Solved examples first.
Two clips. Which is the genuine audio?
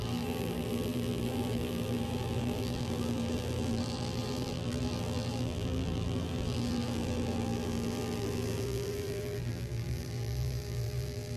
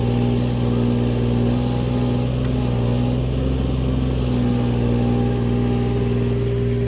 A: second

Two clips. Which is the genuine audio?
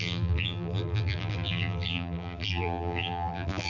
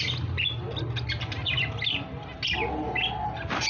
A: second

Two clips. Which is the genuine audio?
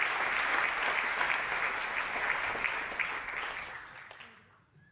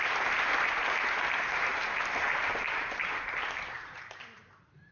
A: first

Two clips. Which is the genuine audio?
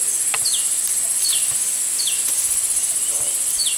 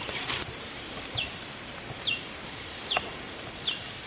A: first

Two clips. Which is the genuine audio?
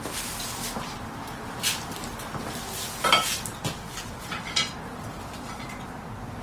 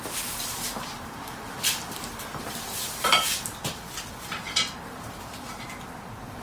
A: first